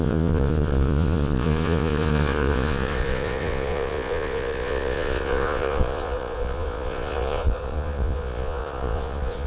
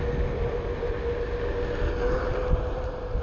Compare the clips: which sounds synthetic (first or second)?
first